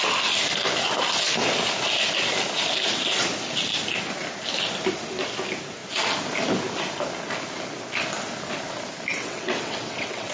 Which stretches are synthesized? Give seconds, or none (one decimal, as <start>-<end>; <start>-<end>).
9.1-10.3